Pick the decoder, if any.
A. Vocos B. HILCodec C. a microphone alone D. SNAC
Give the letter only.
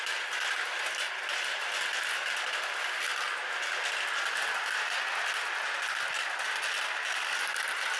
C